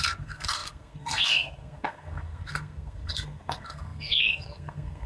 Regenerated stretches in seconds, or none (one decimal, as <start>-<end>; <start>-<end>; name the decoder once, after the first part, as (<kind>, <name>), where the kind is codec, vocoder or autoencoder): 0.0-5.1 (codec, SNAC)